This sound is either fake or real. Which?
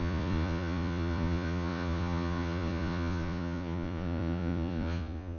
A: fake